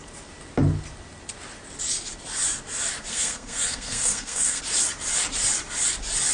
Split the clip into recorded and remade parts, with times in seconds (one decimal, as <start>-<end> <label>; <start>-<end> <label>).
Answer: 0.0-3.1 recorded; 3.1-4.6 remade; 4.6-6.3 recorded

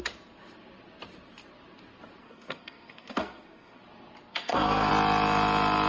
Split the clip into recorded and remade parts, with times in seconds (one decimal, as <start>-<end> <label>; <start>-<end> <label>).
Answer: 0.0-2.2 recorded; 2.2-3.8 remade; 3.8-4.3 recorded; 4.3-4.9 remade; 4.9-5.9 recorded

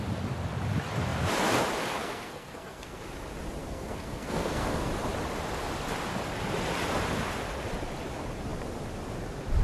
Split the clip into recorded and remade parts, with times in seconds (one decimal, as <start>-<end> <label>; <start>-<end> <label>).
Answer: 0.0-2.0 recorded; 2.0-3.0 remade; 3.0-3.6 recorded; 3.6-4.9 remade; 4.9-9.6 recorded

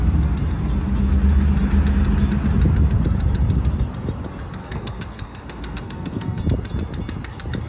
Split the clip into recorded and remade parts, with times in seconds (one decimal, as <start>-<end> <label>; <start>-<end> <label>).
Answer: 0.0-4.6 recorded; 4.6-6.4 remade; 6.4-7.7 recorded

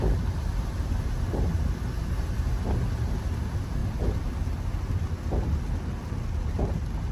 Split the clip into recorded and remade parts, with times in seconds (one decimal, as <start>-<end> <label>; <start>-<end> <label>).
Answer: 0.0-7.1 recorded

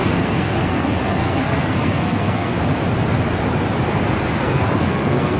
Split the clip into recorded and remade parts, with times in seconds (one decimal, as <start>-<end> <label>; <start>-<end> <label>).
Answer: 0.0-2.5 remade; 2.5-4.4 recorded; 4.4-5.4 remade

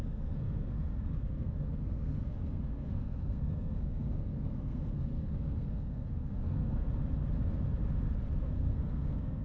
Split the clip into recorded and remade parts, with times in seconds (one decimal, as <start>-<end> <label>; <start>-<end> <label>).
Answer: 0.0-6.8 remade; 6.8-8.4 recorded; 8.4-9.4 remade

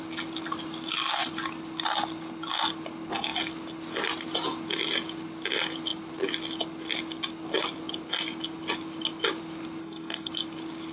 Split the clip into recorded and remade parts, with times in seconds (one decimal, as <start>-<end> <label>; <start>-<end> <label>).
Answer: 0.0-9.8 recorded; 9.8-10.3 remade; 10.3-10.9 recorded